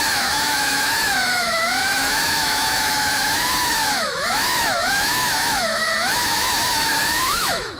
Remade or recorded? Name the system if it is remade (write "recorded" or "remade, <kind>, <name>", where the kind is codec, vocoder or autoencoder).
remade, autoencoder, DAC-VAE